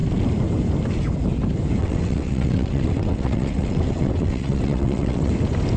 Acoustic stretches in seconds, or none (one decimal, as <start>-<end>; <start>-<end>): 0.0-1.8; 5.3-5.8